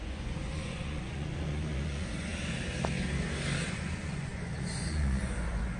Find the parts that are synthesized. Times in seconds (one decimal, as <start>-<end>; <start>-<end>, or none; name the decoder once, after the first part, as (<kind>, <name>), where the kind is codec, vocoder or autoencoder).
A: 0.0-2.3 (vocoder, Vocos); 3.7-5.8